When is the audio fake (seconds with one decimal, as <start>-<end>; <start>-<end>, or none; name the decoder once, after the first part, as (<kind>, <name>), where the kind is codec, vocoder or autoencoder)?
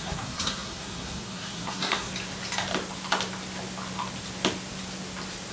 0.0-2.1 (codec, SNAC)